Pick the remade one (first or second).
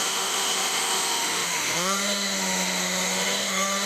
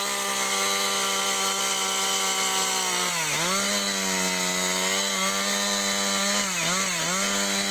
first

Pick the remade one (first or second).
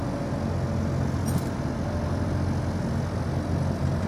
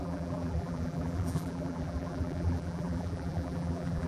second